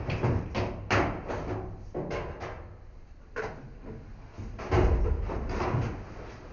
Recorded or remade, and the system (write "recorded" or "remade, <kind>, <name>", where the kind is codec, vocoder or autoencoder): recorded